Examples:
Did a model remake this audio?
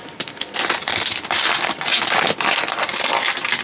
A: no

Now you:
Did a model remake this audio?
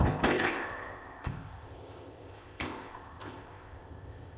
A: yes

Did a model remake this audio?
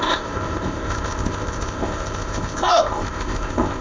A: yes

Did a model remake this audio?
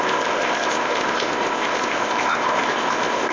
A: yes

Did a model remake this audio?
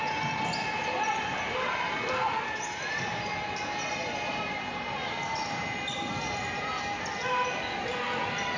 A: no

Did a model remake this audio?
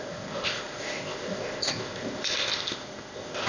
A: yes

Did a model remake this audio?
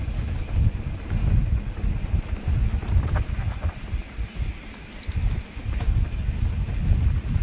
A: no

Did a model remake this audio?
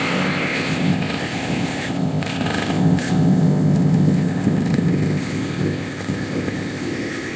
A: yes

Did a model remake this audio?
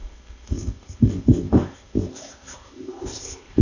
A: yes